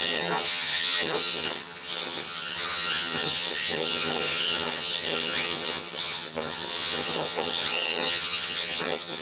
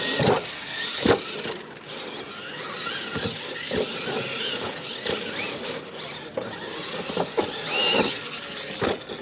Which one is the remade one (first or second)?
first